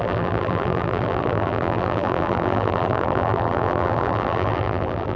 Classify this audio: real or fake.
fake